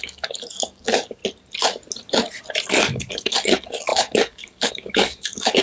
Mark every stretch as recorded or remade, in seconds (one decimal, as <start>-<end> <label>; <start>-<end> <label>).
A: 0.0-1.2 remade; 1.2-2.7 recorded; 2.7-5.6 remade